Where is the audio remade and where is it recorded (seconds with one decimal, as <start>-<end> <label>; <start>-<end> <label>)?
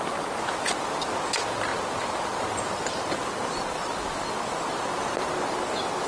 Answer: 0.0-6.1 recorded